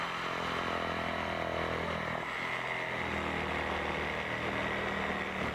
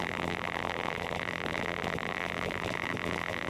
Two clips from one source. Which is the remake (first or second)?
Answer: second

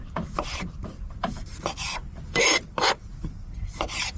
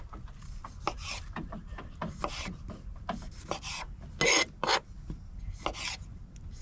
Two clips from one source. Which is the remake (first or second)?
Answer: first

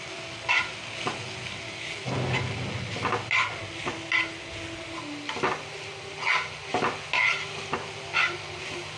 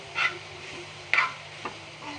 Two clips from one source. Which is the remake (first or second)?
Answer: second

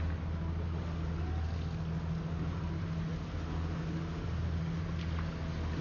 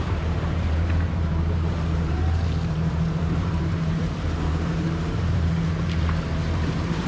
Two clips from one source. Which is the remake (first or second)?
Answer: second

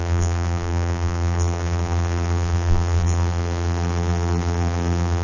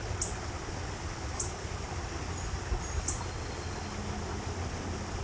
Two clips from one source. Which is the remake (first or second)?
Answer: first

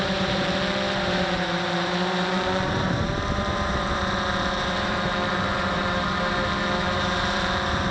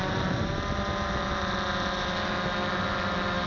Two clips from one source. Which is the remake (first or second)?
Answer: first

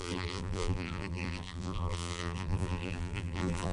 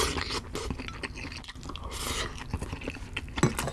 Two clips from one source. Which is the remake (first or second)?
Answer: first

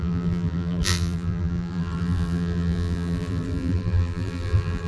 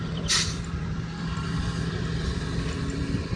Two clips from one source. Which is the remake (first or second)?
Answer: first